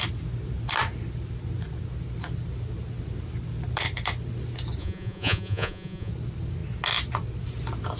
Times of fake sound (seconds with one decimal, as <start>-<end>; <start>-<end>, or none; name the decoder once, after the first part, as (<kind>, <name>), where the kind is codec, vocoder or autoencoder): 4.8-6.1 (vocoder, Vocos)